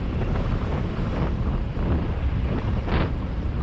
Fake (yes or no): yes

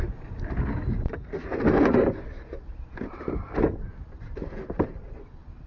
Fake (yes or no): no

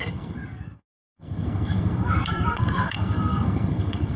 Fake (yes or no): yes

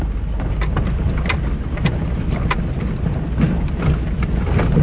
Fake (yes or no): no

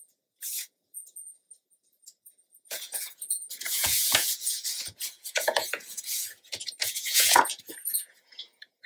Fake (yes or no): yes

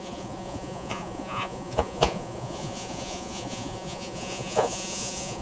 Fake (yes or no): yes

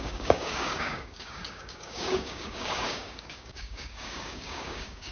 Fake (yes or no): yes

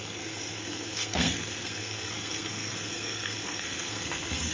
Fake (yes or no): yes